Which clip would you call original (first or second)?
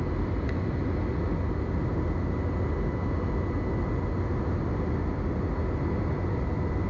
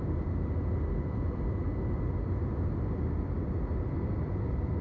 first